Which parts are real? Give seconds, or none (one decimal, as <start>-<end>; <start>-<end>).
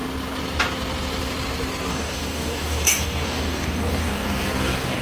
0.0-1.9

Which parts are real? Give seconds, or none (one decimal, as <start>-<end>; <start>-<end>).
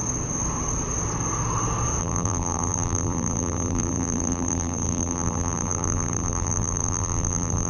0.0-2.0